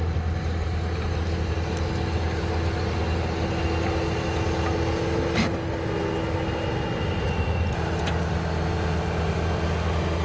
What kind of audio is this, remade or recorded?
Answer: recorded